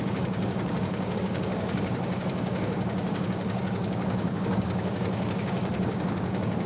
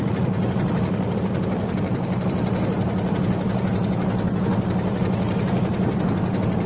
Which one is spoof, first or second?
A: first